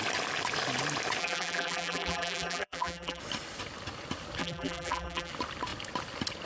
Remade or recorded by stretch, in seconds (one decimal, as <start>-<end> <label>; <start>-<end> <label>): 0.0-1.2 recorded; 1.2-3.2 remade; 3.2-4.4 recorded; 4.4-5.3 remade; 5.3-6.5 recorded